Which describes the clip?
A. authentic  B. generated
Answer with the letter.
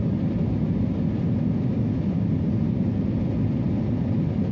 A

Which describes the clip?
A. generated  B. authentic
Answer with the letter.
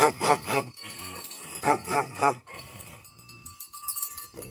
A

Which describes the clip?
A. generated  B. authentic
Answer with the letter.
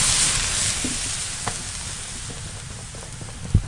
B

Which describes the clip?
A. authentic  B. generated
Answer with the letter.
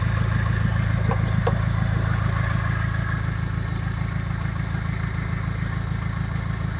A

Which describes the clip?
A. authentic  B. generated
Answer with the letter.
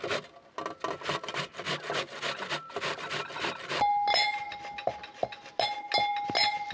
A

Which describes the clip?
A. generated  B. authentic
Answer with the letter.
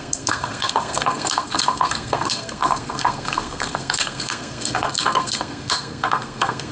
A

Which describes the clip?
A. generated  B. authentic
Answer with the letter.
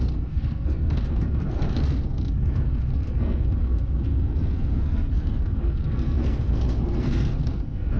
A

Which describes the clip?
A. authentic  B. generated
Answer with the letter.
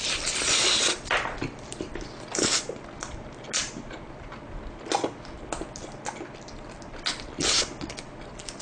A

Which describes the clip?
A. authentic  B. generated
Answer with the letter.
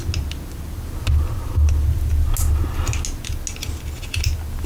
A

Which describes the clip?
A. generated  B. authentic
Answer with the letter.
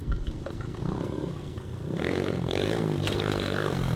A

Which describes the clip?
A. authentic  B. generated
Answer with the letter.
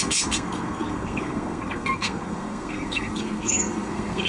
B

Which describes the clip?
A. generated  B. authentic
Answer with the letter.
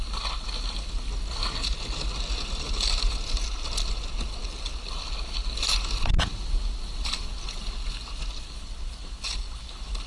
B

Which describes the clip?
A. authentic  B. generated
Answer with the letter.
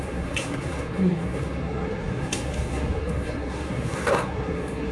B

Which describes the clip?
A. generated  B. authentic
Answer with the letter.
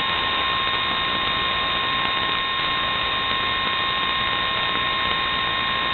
B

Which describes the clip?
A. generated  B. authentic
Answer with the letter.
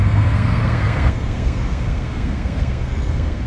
A